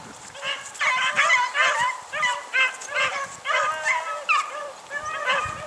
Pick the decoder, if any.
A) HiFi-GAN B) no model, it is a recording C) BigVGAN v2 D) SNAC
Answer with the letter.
B